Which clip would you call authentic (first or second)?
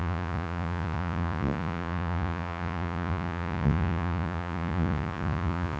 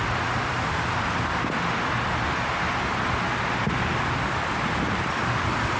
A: second